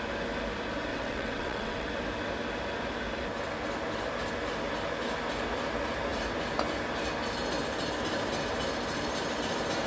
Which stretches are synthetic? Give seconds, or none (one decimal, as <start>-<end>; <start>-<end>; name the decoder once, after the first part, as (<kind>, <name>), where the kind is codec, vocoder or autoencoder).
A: 0.9-1.9 (vocoder, WaveNeXt)